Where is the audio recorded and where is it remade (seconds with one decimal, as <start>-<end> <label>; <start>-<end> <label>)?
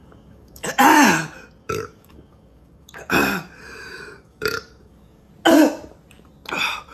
0.0-0.8 remade; 0.8-1.6 recorded; 1.6-5.3 remade; 5.3-6.9 recorded